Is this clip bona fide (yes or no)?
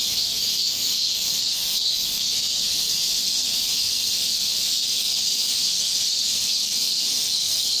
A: no